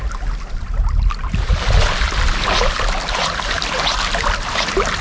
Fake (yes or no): no